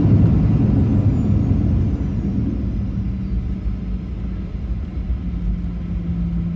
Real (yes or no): yes